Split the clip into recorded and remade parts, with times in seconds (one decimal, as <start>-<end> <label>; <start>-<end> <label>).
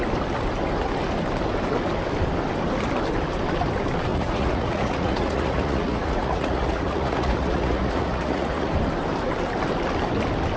0.0-4.1 recorded; 4.1-8.7 remade; 8.7-10.6 recorded